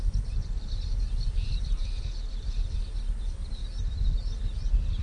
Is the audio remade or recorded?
recorded